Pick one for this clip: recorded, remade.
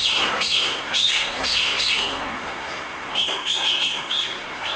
remade